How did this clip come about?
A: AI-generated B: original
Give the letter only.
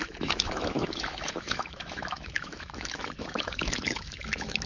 A